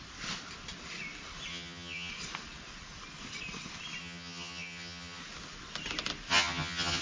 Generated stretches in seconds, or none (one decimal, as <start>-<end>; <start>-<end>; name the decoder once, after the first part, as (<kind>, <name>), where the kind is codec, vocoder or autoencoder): 1.5-2.1 (vocoder, HiFi-GAN); 4.0-5.2; 6.3-7.0